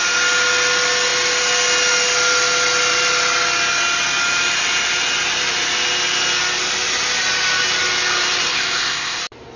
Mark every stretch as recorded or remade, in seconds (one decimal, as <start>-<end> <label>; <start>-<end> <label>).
0.0-8.5 recorded; 8.5-9.2 remade; 9.2-9.6 recorded